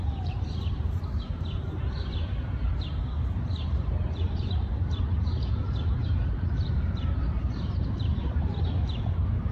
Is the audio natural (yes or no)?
no